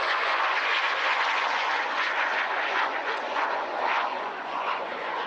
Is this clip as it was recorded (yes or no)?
no